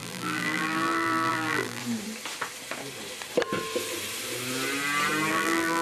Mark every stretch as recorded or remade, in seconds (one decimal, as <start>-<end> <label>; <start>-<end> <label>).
0.0-1.8 remade; 1.8-5.3 recorded; 5.3-5.8 remade